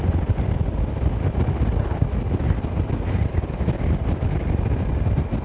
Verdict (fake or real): real